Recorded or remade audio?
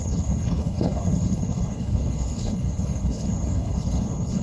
remade